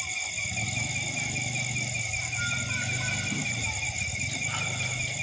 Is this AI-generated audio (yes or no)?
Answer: no